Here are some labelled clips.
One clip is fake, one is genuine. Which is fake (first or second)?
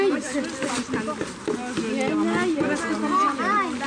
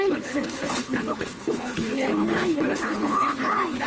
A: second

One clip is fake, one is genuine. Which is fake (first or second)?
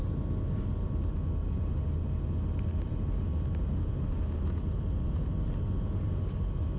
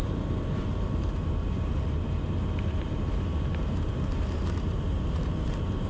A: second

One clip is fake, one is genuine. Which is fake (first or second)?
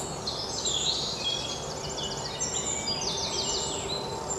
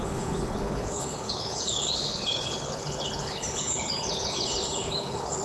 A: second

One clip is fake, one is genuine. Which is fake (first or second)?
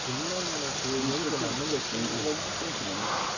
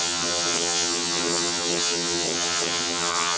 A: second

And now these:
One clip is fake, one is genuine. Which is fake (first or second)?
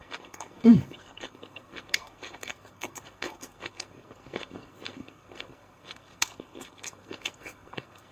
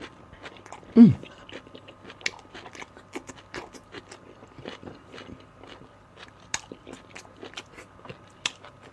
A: first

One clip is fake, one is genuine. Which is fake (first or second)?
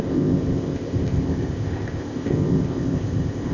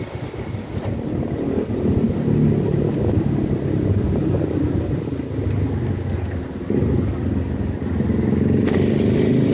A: first